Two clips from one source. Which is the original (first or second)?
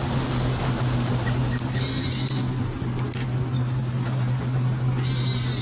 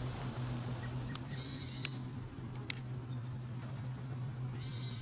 first